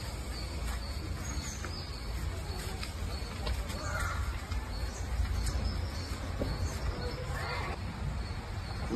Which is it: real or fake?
real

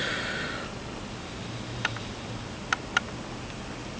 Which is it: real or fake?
real